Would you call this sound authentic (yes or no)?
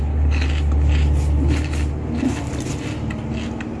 yes